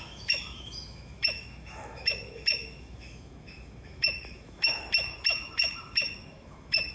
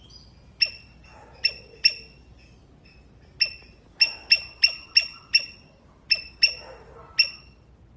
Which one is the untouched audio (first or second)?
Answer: second